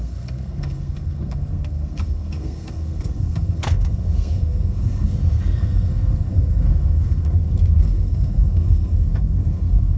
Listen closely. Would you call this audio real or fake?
fake